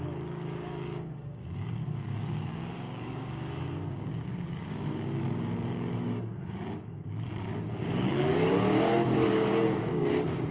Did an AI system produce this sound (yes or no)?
yes